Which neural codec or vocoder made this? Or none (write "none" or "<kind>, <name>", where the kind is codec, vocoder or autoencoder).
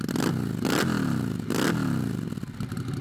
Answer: none